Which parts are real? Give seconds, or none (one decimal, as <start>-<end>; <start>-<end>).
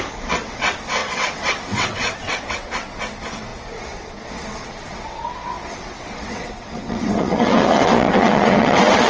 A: none